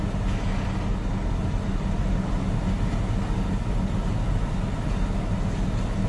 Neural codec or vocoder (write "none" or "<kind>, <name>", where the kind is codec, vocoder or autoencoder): none